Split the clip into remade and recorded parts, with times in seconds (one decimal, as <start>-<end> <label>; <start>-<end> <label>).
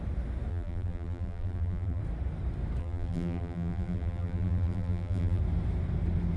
0.0-0.5 recorded; 0.5-2.0 remade; 2.0-2.8 recorded; 2.8-5.4 remade; 5.4-6.4 recorded